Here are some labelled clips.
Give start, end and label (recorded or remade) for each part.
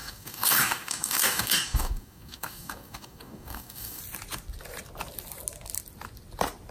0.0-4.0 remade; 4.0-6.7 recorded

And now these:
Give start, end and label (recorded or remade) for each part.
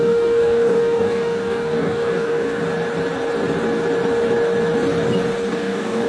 0.0-2.6 remade; 2.6-5.5 recorded; 5.5-6.1 remade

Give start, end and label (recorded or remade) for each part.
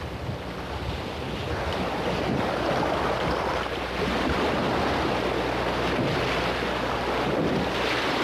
0.0-8.2 recorded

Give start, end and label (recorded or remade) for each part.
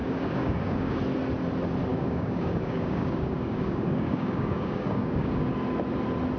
0.0-1.0 remade; 1.0-1.9 recorded; 1.9-5.5 remade; 5.5-6.4 recorded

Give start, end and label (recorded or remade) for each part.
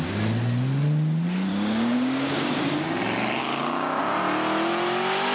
0.0-1.5 recorded; 1.5-2.6 remade; 2.6-3.4 recorded; 3.4-4.0 remade; 4.0-5.3 recorded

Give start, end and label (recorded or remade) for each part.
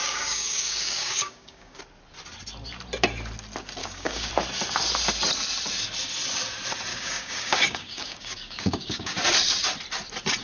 0.0-1.8 remade; 1.8-3.8 recorded; 3.8-4.3 remade; 4.3-6.9 recorded; 6.9-9.2 remade; 9.2-10.4 recorded